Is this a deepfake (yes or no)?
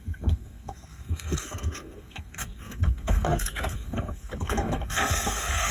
yes